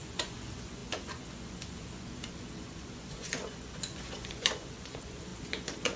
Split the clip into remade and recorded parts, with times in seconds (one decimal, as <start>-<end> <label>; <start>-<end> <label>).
0.0-6.0 remade

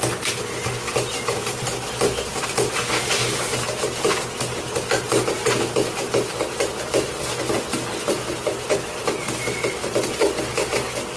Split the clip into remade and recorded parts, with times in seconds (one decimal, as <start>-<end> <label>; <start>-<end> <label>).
0.0-11.2 recorded

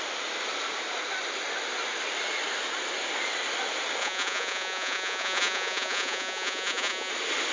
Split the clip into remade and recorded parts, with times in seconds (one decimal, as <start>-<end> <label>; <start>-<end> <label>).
0.0-4.0 recorded; 4.0-7.1 remade; 7.1-7.5 recorded

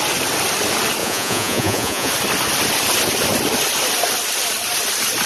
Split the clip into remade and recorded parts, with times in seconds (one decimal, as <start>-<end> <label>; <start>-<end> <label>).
0.0-1.0 recorded; 1.0-2.1 remade; 2.1-5.3 recorded